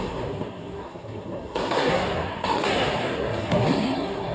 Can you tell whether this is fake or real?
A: fake